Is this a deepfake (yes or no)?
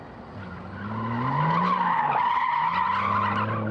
no